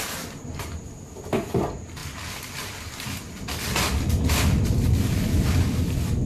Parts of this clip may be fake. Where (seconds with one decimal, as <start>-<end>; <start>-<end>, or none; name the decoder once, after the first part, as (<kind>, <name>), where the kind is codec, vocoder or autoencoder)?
none

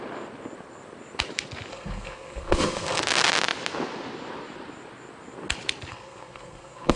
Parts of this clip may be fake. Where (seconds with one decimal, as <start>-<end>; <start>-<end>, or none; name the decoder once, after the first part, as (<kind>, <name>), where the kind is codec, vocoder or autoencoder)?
1.7-3.0 (codec, SNAC); 5.9-7.0